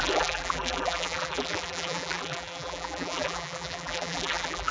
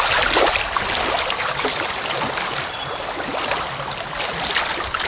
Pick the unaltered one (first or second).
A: second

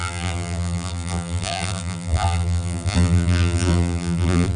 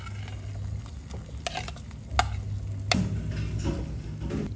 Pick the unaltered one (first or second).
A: second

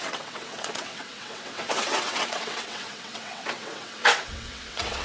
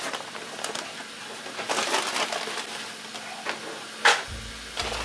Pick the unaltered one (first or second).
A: second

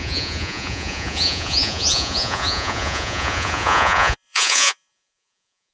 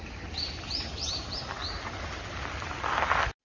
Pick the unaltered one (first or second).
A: second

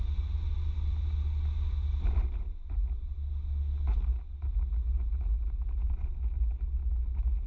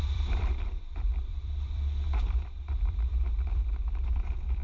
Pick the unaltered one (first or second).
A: first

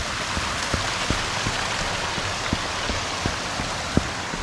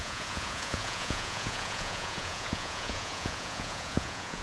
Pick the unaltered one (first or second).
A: first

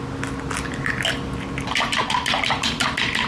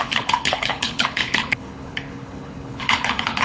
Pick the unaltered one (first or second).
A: first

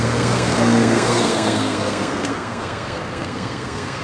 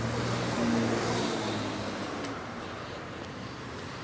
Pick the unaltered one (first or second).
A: second